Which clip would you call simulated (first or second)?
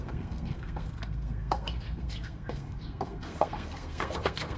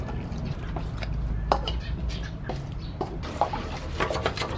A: first